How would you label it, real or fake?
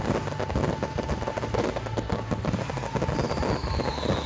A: real